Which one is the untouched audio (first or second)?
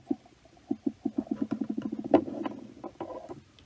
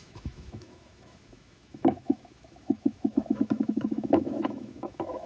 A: first